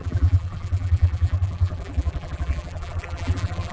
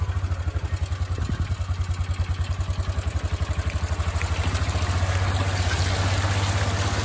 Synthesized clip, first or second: first